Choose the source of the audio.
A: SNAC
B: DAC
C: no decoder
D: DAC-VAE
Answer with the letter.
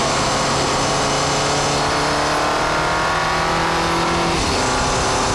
C